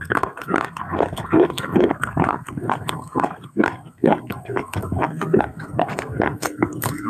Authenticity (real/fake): fake